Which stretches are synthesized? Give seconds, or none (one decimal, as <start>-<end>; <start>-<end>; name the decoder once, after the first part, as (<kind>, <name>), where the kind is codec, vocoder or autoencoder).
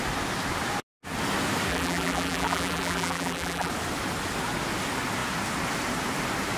1.7-3.7 (vocoder, BigVGAN v2)